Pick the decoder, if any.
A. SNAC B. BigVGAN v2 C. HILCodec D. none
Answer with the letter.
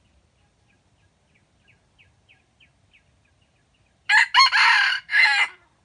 D